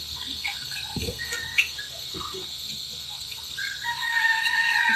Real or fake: fake